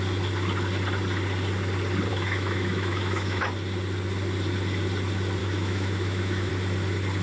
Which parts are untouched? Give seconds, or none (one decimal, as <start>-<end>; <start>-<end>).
0.0-2.1; 3.4-5.4; 6.5-7.2